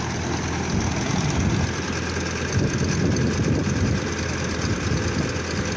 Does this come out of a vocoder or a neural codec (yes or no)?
no